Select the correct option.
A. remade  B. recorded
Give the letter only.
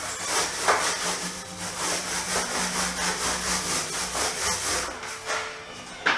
B